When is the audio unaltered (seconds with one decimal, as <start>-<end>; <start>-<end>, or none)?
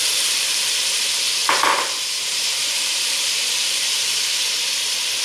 none